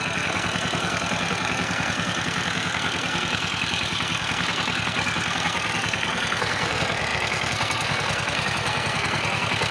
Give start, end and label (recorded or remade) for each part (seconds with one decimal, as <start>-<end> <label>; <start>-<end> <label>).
0.0-9.7 remade